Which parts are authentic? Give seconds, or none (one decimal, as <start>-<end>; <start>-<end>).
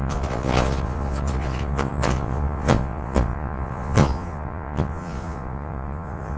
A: none